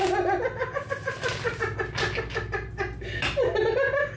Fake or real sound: real